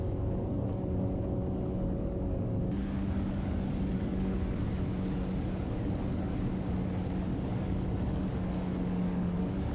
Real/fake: fake